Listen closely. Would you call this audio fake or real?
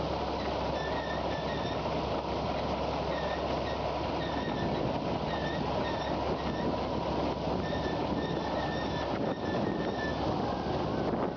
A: real